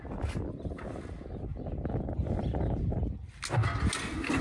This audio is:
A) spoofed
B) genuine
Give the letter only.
B